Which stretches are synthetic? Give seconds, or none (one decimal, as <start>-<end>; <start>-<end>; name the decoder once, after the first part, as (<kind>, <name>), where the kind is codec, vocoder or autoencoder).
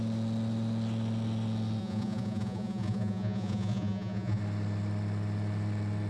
1.8-4.4 (vocoder, Vocos)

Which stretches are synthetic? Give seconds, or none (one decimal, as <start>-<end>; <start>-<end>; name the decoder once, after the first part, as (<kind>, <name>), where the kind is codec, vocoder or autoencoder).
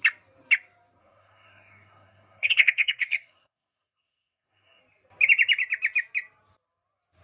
1.0-4.8 (codec, SNAC)